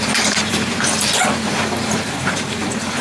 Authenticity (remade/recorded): remade